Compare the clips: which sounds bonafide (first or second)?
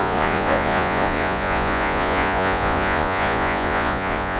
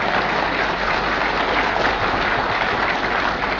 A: second